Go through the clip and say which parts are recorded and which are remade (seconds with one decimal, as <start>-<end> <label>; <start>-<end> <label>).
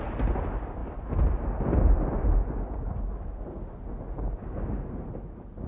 0.0-5.7 recorded